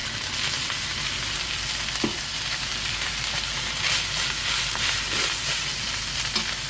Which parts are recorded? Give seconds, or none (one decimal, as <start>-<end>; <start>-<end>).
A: 0.0-6.7